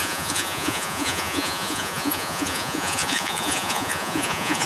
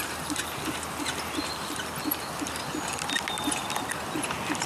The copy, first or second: first